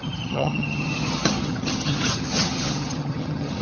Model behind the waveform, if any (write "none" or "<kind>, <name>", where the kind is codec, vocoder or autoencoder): vocoder, HiFi-GAN